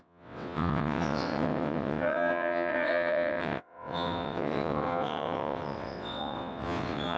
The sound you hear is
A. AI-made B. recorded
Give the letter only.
A